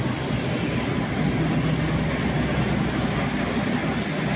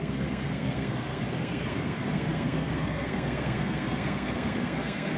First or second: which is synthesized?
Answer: second